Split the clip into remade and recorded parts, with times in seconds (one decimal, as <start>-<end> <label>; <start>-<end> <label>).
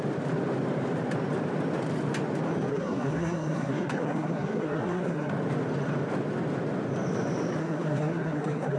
0.0-2.7 recorded; 2.7-5.3 remade; 5.3-7.6 recorded; 7.6-8.8 remade